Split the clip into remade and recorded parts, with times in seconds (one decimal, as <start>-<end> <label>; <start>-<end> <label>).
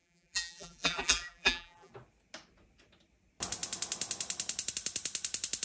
0.0-1.9 remade; 1.9-5.6 recorded